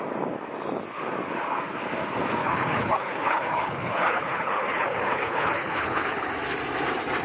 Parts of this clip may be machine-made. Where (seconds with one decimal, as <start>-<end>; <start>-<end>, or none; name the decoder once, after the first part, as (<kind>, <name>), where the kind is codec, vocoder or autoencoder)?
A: 2.4-6.3 (codec, HILCodec)